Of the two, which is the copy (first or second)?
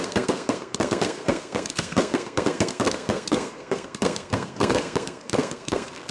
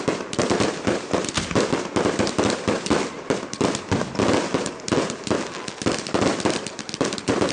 first